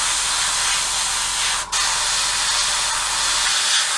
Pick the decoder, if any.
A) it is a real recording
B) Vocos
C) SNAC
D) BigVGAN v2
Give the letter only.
A